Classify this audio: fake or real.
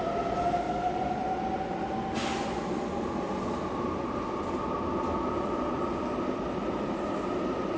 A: real